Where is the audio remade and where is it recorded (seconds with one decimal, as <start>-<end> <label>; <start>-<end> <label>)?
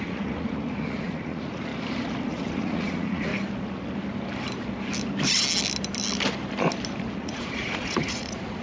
0.0-1.7 remade; 1.7-2.3 recorded; 2.3-3.3 remade; 3.3-7.2 recorded; 7.2-8.6 remade